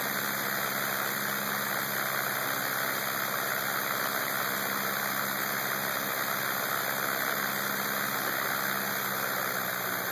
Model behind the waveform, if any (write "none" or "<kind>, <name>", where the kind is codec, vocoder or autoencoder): none